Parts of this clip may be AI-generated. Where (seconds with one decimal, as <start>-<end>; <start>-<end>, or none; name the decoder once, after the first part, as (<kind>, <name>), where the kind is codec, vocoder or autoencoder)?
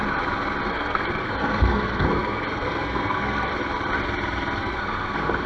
0.7-3.5 (codec, SNAC); 4.6-5.5